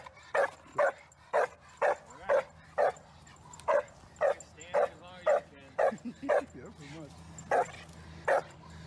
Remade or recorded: recorded